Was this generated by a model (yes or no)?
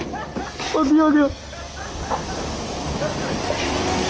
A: no